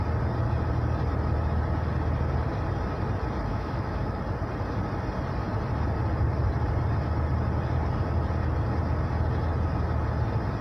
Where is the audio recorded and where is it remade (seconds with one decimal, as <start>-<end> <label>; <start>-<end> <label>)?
0.0-3.5 recorded; 3.5-4.2 remade; 4.2-10.6 recorded

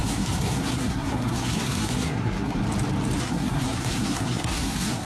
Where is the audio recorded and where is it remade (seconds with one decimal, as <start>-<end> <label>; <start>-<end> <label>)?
0.0-2.6 remade; 2.6-3.2 recorded; 3.2-5.0 remade